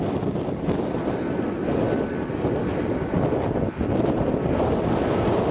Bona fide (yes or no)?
yes